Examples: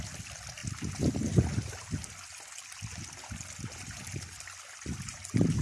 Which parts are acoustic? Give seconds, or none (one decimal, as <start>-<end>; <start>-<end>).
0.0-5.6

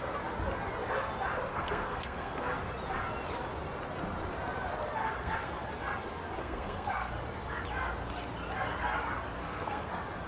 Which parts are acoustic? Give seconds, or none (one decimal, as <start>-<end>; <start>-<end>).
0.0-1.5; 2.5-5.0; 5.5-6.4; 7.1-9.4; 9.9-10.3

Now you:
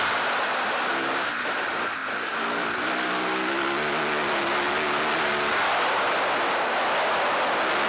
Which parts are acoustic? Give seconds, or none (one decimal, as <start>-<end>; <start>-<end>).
0.0-7.9

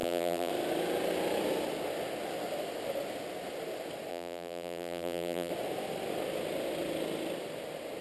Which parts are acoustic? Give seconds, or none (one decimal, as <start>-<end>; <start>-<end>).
0.5-4.1; 5.5-8.0

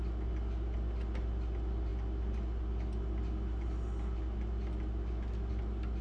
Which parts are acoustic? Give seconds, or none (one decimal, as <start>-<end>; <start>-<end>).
0.0-6.0